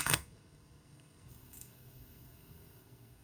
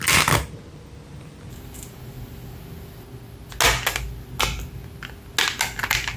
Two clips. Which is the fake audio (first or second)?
first